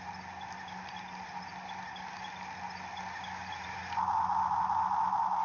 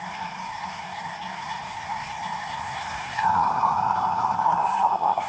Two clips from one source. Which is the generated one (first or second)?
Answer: second